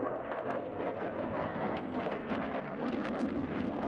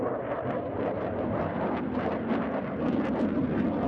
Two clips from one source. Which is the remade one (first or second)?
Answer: first